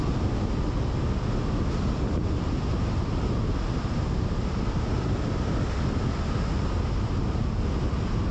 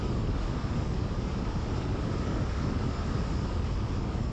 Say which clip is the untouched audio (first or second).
first